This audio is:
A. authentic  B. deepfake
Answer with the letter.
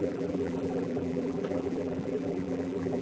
B